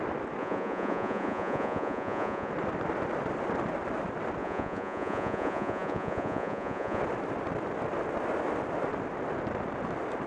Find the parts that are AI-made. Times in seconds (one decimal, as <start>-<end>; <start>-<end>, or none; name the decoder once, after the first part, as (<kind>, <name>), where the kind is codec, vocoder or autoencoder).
0.4-2.5 (vocoder, Vocos); 4.4-7.0